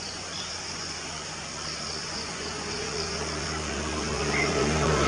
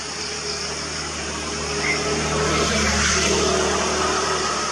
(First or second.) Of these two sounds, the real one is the second